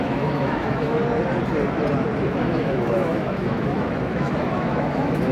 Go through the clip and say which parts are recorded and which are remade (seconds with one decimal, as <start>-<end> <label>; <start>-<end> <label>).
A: 0.0-1.0 remade; 1.0-2.3 recorded; 2.3-5.3 remade